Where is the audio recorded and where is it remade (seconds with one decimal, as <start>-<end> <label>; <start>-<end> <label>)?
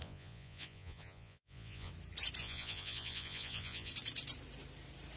0.0-1.9 remade; 1.9-2.4 recorded; 2.4-3.9 remade; 3.9-5.2 recorded